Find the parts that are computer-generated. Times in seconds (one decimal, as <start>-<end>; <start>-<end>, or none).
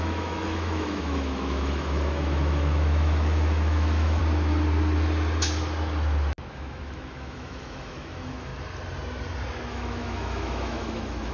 0.0-4.2; 6.5-8.5; 9.7-11.3